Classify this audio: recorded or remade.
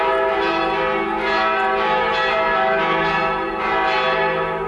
recorded